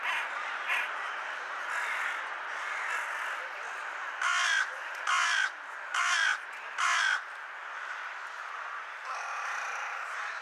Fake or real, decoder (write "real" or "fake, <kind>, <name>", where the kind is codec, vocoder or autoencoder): real